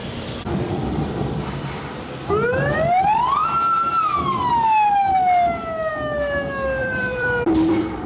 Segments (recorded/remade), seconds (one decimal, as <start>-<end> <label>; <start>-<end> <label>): 0.0-2.0 remade; 2.0-6.8 recorded; 6.8-8.1 remade